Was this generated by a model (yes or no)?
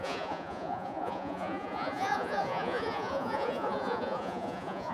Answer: yes